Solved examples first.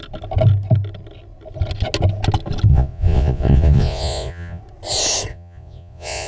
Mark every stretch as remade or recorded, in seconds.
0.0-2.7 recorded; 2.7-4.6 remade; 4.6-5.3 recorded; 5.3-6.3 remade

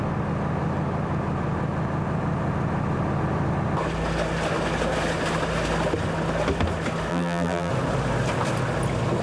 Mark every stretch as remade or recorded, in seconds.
0.0-7.1 recorded; 7.1-7.7 remade; 7.7-9.2 recorded

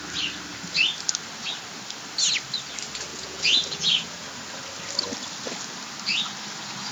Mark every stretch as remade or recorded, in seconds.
0.0-3.1 recorded; 3.1-4.3 remade; 4.3-6.9 recorded

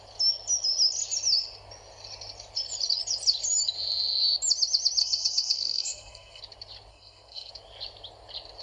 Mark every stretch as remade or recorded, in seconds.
0.0-5.0 recorded; 5.0-6.4 remade; 6.4-6.9 recorded; 6.9-7.5 remade; 7.5-8.6 recorded

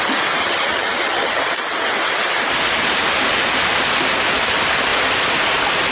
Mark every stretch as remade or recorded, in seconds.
0.0-0.4 recorded; 0.4-1.4 remade; 1.4-5.9 recorded

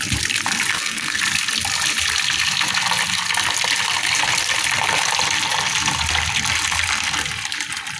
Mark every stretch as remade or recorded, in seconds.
0.0-0.7 recorded; 0.7-1.2 remade; 1.2-8.0 recorded